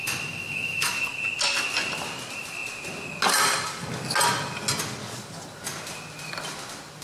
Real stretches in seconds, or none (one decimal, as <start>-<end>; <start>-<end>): 1.0-7.0